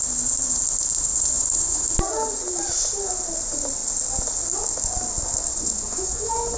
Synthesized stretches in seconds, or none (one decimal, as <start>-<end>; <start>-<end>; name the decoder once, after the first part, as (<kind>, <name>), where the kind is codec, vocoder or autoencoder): 1.1-1.8 (vocoder, Vocos); 5.5-6.6

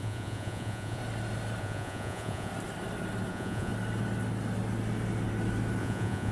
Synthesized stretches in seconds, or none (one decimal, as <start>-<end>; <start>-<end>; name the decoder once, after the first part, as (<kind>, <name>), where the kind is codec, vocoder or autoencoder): 0.0-1.0 (vocoder, Vocos); 1.6-2.5; 3.3-3.7; 5.8-6.3

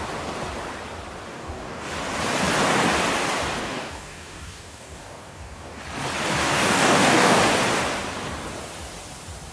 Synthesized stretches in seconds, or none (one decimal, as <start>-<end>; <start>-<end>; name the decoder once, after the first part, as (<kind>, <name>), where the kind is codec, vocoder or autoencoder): 1.3-1.9 (codec, DAC); 3.6-5.8; 6.4-7.4

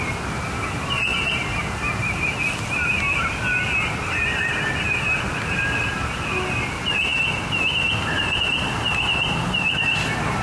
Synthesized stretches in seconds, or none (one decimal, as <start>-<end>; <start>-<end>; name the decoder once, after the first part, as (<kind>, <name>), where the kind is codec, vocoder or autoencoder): none